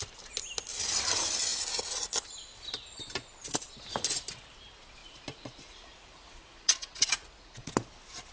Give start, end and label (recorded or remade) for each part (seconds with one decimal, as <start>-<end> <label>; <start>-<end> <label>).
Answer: 0.0-5.0 recorded; 5.0-7.7 remade; 7.7-8.3 recorded